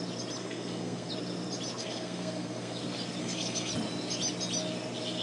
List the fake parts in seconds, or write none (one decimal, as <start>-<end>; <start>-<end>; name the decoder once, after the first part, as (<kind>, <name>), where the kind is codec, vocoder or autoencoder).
0.4-1.1 (codec, SNAC); 1.8-2.8; 3.2-3.7